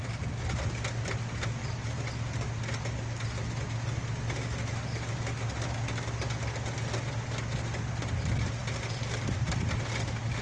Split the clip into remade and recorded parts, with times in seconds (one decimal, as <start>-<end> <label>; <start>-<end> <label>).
0.0-10.4 recorded